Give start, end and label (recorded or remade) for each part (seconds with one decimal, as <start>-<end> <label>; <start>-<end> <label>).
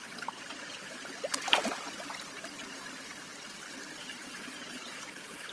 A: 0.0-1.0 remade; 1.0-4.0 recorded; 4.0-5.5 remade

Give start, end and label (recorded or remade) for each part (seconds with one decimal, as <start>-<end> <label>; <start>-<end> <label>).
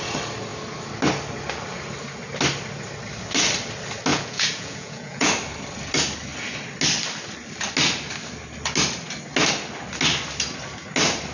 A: 0.0-4.1 recorded; 4.1-5.3 remade; 5.3-11.3 recorded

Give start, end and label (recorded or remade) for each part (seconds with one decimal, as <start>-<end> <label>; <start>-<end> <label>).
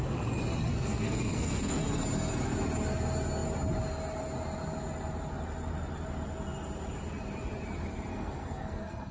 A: 0.0-0.7 recorded; 0.7-1.8 remade; 1.8-8.1 recorded; 8.1-9.1 remade